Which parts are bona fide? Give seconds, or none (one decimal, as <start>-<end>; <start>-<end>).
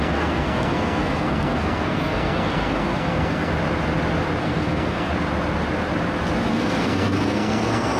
3.5-4.4; 5.1-6.5